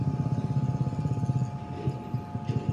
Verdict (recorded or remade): recorded